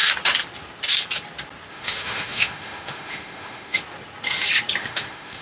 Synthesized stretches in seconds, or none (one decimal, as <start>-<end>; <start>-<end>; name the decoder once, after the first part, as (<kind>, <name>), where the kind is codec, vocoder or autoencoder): 1.7-3.8 (autoencoder, DAC-VAE); 4.8-5.4